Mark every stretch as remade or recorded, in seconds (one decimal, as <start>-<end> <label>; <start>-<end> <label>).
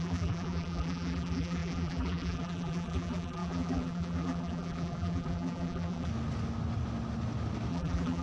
0.0-6.1 remade; 6.1-7.7 recorded; 7.7-8.2 remade